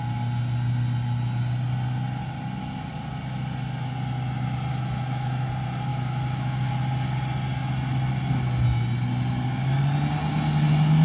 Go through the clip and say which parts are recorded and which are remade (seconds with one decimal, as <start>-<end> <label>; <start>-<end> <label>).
0.0-4.7 recorded; 4.7-5.5 remade; 5.5-5.9 recorded; 5.9-6.7 remade; 6.7-11.0 recorded